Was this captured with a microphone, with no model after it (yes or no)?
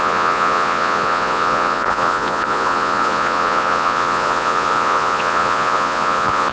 no